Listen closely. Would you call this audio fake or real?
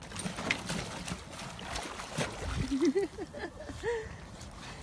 real